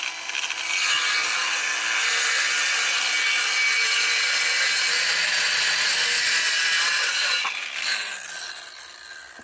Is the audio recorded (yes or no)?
yes